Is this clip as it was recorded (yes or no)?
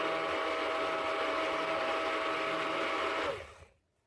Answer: yes